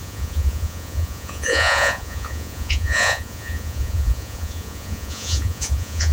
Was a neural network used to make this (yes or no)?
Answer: yes